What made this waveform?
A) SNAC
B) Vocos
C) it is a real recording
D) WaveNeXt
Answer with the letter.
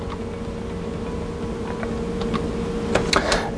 C